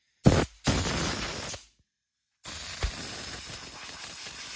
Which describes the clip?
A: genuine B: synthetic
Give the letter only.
A